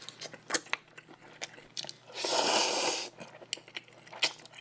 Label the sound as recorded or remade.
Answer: recorded